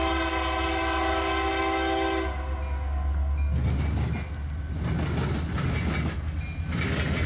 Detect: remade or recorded recorded